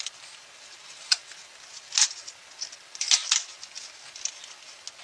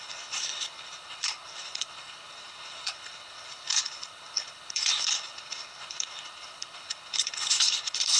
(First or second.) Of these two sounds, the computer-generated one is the second